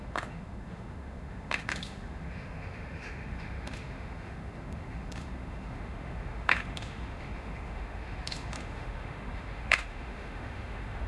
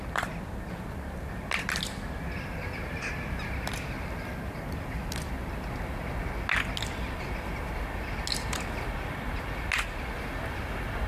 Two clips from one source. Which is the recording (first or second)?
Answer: second